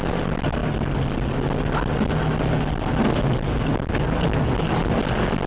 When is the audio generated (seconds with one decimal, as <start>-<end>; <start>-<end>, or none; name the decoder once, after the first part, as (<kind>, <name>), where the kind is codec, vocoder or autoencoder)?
none